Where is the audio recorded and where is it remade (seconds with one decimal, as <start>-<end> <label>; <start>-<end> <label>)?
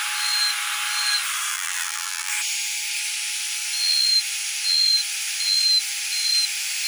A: 0.0-1.5 recorded; 1.5-2.3 remade; 2.3-6.9 recorded